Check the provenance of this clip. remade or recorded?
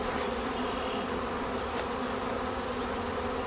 recorded